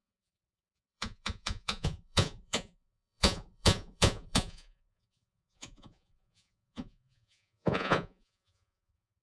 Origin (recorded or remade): remade